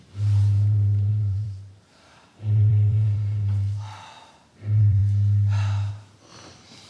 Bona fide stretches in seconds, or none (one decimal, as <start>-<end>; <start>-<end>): 5.0-5.9